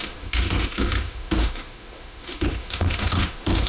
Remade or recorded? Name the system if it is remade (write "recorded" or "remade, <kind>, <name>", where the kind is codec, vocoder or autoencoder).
remade, autoencoder, DAC-VAE